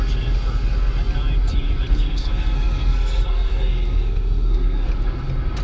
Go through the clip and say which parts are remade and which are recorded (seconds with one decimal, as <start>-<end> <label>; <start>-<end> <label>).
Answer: 0.0-1.9 recorded; 1.9-4.9 remade; 4.9-5.6 recorded